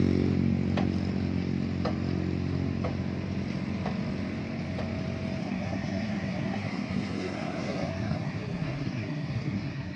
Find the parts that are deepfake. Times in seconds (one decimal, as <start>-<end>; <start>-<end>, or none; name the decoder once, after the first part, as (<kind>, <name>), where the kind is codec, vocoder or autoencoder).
5.4-10.0 (codec, SNAC)